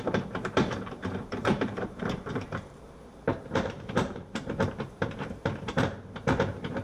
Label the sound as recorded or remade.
remade